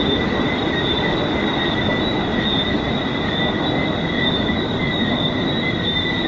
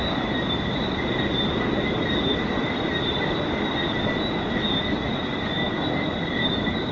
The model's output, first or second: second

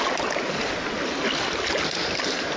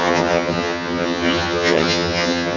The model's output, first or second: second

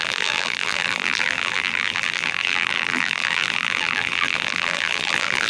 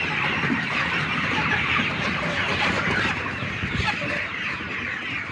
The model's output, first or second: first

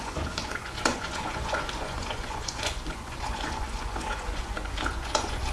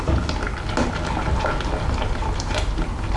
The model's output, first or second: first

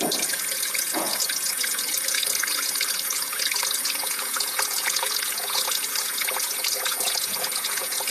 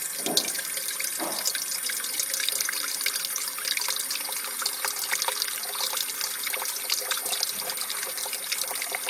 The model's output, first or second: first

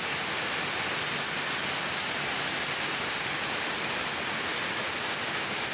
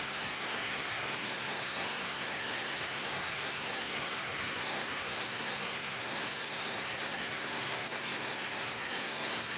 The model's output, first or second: second